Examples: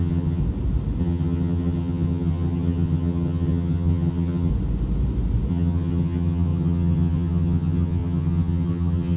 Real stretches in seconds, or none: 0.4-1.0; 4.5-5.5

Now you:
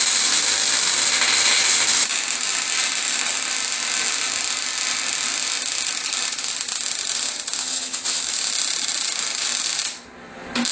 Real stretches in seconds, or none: 0.0-7.6; 8.2-10.7

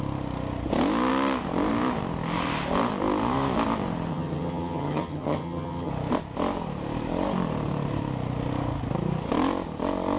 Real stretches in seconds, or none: 0.0-4.1; 5.9-10.2

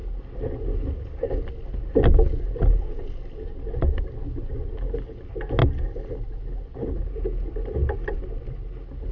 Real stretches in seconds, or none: 0.0-9.1